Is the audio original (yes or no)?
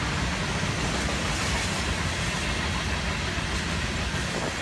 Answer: yes